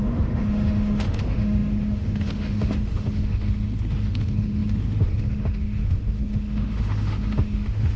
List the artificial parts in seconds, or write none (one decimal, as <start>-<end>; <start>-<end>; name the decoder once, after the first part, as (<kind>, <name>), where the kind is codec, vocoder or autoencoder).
0.0-8.0 (autoencoder, DAC-VAE)